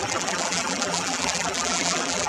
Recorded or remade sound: remade